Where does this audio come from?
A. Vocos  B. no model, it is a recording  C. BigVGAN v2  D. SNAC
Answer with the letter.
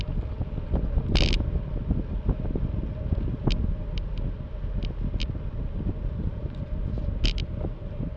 B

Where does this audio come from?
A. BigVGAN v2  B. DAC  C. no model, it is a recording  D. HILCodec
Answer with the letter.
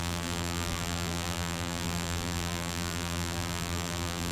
A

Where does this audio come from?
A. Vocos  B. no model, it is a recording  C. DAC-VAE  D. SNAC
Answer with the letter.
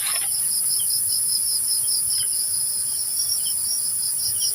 B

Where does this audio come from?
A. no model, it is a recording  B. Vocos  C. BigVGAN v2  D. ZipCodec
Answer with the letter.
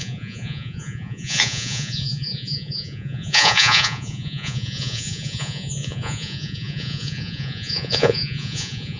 B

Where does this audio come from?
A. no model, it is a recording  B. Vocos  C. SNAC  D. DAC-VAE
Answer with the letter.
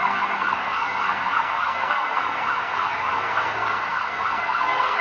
C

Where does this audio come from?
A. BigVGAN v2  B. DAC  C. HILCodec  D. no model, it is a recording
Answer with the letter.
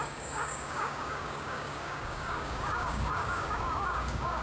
B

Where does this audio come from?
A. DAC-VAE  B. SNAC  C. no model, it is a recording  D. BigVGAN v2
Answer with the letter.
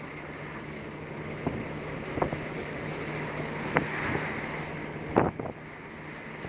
C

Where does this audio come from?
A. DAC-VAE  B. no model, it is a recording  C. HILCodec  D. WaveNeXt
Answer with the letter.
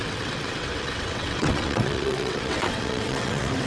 D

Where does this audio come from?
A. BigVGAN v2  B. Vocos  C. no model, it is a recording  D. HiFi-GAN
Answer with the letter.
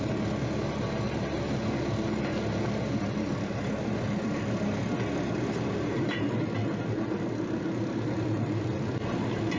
C